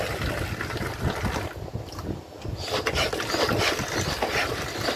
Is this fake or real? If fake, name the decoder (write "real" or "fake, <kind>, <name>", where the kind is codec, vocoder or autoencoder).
real